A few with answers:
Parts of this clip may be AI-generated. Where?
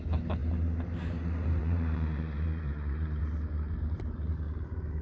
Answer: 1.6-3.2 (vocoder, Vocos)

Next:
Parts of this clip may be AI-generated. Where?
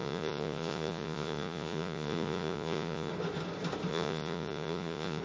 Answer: 0.0-3.1 (vocoder, Vocos); 3.9-5.2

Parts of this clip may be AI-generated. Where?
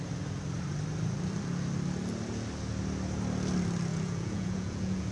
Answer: 3.9-5.1 (vocoder, Vocos)